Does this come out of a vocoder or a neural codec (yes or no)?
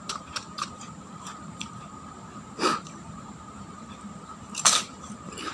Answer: yes